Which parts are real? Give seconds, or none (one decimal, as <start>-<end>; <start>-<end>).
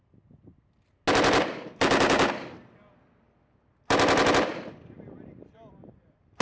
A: 0.0-6.4